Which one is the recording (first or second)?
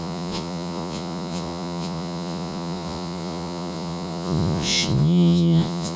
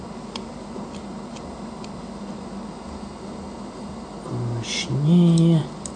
second